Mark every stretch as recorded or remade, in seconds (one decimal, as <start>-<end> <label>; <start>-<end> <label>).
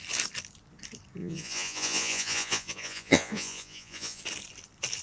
0.0-1.2 recorded; 1.2-4.2 remade; 4.2-5.0 recorded